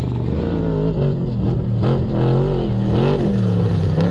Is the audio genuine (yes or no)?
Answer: yes